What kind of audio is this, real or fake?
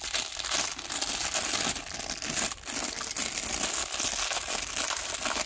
real